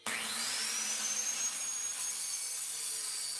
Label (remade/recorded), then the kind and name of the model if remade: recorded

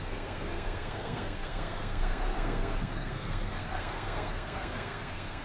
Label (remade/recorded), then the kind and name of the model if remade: remade, codec, SNAC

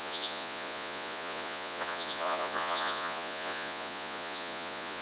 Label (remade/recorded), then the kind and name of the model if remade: remade, vocoder, Vocos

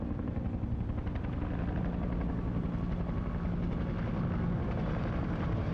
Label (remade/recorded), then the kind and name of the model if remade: recorded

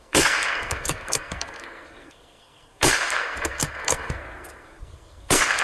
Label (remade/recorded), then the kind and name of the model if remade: remade, codec, SNAC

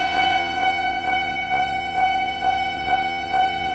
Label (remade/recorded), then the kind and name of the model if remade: remade, vocoder, WaveNeXt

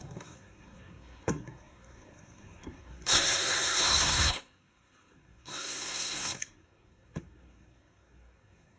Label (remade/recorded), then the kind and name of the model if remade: remade, codec, SNAC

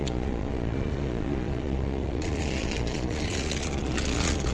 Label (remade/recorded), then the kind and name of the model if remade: remade, vocoder, Vocos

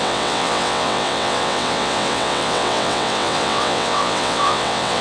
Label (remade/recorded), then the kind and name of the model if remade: remade, vocoder, WaveNeXt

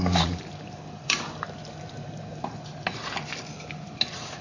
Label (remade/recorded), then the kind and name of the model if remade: recorded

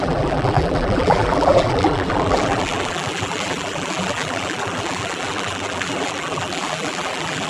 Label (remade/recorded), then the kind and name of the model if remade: remade, vocoder, BigVGAN v2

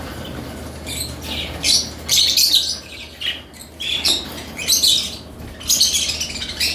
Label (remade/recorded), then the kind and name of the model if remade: recorded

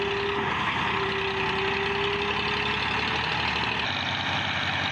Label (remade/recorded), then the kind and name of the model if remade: recorded